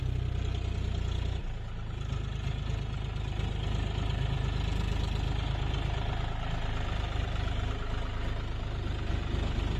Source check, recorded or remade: recorded